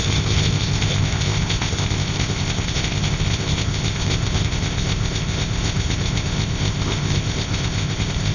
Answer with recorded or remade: remade